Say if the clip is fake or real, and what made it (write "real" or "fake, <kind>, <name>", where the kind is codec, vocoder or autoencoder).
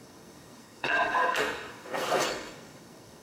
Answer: fake, codec, SNAC